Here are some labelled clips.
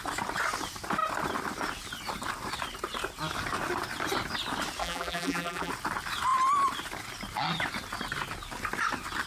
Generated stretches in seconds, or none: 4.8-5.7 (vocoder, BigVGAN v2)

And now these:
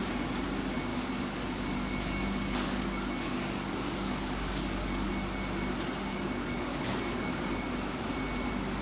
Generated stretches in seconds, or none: 0.9-5.1 (codec, DAC); 6.1-7.7

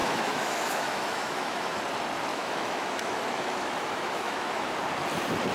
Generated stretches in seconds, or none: 0.0-1.8 (autoencoder, DAC-VAE); 2.3-4.7

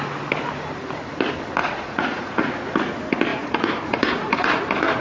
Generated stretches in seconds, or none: 1.6-2.5 (vocoder, Vocos); 3.3-4.6

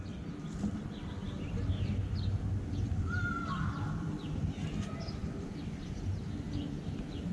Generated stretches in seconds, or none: none

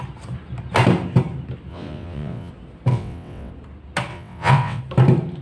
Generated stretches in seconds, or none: 1.7-2.5 (vocoder, WaveNeXt); 2.9-3.5; 4.1-4.8

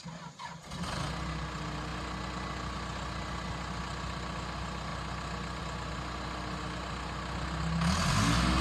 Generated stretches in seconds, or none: none

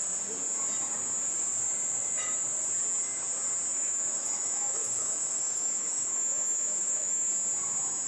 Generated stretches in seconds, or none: 3.7-7.3 (autoencoder, DAC-VAE)